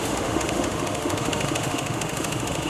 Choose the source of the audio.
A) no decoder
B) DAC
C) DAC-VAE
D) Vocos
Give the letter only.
C